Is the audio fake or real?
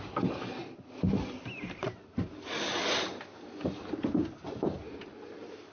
fake